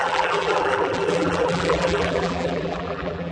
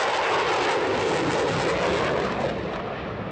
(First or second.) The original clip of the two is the second